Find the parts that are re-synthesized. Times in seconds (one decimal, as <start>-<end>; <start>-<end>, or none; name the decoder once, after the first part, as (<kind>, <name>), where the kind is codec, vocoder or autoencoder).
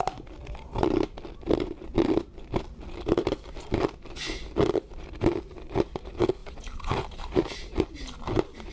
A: 6.4-7.5 (vocoder, BigVGAN v2)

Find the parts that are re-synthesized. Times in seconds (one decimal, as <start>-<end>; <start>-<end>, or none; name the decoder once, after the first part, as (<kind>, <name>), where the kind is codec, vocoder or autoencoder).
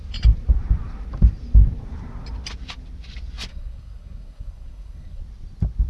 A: 3.5-5.2 (codec, SNAC)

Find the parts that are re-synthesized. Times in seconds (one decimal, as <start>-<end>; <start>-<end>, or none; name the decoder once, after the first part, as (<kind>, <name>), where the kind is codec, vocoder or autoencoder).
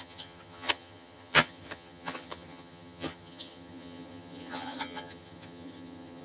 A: 0.0-6.2 (vocoder, HiFi-GAN)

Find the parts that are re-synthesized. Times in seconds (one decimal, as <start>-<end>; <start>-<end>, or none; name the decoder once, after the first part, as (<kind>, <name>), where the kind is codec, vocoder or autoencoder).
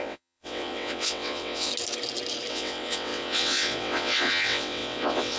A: 0.0-1.7 (vocoder, WaveNeXt); 2.5-5.4